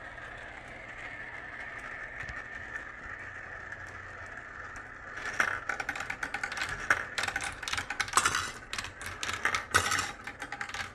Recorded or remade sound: recorded